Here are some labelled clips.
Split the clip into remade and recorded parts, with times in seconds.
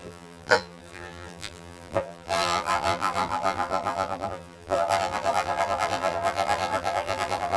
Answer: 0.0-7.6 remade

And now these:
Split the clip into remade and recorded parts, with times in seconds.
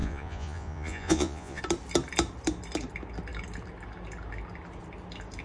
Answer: 0.0-1.6 remade; 1.6-5.4 recorded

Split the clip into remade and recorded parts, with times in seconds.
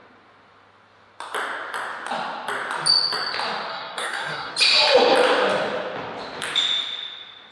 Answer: 0.0-3.7 recorded; 3.7-4.5 remade; 4.5-7.5 recorded